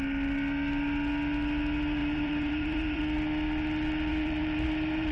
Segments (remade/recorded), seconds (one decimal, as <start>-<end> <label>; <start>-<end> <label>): 0.0-2.0 recorded; 2.0-3.0 remade; 3.0-4.1 recorded; 4.1-5.1 remade